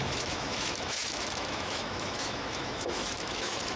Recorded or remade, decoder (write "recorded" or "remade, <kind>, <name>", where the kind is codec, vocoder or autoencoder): remade, autoencoder, DAC-VAE